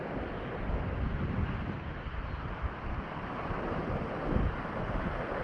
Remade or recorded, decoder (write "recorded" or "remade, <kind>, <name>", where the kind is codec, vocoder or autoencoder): recorded